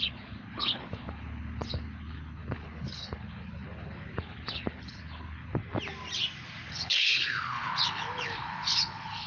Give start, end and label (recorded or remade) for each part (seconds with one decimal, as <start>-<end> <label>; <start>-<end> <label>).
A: 0.0-5.6 remade; 5.6-6.7 recorded; 6.7-9.3 remade